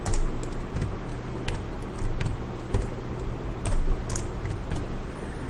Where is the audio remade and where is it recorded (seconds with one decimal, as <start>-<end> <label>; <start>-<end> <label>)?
0.0-5.5 recorded